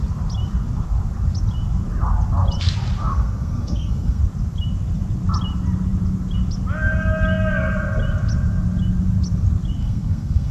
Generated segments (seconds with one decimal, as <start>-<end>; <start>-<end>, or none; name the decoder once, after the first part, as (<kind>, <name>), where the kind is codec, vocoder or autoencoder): 3.0-4.2 (codec, SNAC); 9.8-10.5